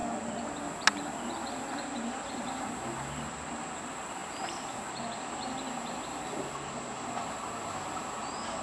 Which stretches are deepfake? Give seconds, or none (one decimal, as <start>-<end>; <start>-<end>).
none